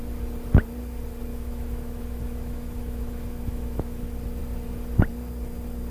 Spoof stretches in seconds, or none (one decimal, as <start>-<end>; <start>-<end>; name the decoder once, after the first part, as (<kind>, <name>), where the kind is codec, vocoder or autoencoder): 1.3-4.0 (autoencoder, DAC-VAE)